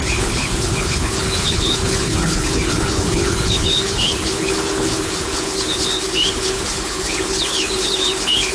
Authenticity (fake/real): fake